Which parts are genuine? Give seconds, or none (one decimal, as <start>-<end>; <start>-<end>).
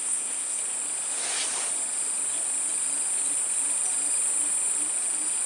0.6-5.5